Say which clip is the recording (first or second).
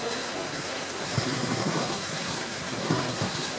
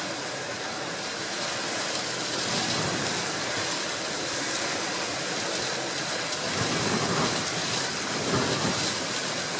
second